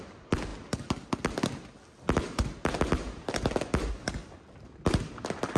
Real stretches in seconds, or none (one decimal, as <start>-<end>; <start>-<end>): 0.0-5.6